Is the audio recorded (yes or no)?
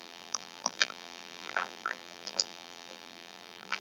no